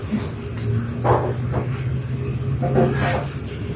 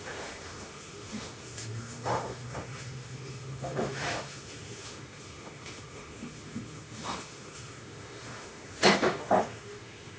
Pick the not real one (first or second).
second